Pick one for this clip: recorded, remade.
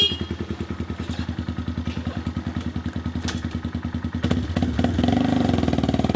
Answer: recorded